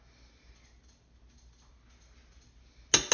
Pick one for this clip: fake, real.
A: real